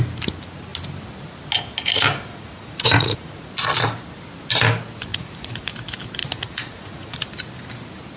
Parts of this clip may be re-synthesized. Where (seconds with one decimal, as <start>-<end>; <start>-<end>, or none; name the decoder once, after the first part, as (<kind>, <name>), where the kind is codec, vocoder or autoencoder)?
2.3-3.5 (vocoder, Vocos); 5.1-5.7; 6.2-7.3